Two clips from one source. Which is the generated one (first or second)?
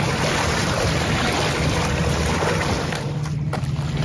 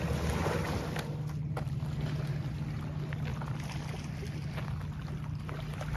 first